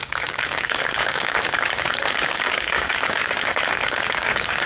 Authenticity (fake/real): fake